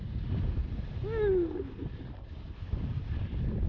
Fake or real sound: real